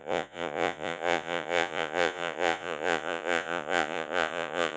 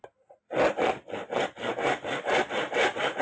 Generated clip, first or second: first